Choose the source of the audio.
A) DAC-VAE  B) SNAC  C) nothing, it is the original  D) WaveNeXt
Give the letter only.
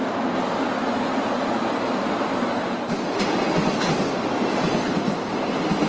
C